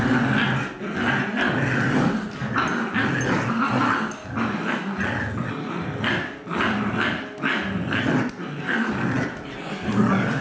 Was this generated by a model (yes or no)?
no